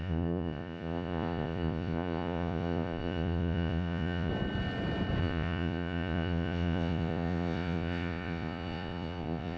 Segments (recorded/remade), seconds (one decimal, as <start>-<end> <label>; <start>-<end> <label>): 0.0-4.3 remade; 4.3-5.2 recorded; 5.2-9.6 remade